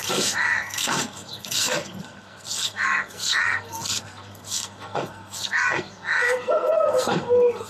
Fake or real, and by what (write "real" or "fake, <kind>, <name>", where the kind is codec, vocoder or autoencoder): fake, codec, SNAC